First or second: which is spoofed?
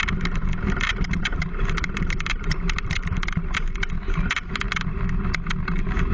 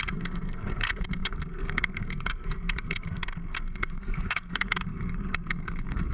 second